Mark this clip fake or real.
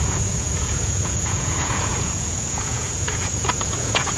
fake